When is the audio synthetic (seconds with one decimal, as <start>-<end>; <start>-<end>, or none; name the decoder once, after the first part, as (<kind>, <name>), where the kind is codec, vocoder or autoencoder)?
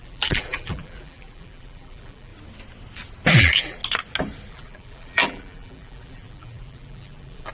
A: 0.0-2.3 (vocoder, BigVGAN v2); 3.4-3.8; 4.5-7.5